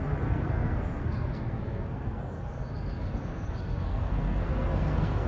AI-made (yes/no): yes